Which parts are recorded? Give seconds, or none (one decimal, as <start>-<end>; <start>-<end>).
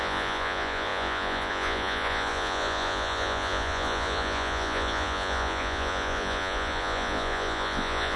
none